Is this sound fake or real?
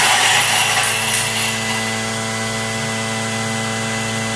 real